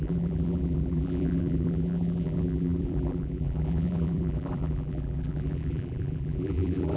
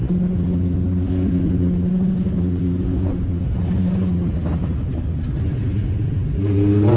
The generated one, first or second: first